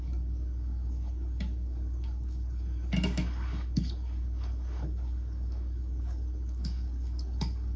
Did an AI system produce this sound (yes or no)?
yes